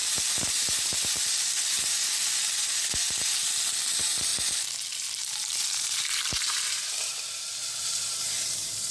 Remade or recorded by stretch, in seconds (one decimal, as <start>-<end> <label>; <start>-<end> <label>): 0.0-2.4 remade; 2.4-3.9 recorded; 3.9-4.3 remade; 4.3-5.2 recorded; 5.2-7.1 remade; 7.1-7.8 recorded; 7.8-8.9 remade